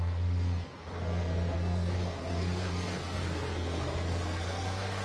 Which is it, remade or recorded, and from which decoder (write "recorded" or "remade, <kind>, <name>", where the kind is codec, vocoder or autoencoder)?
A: remade, codec, SNAC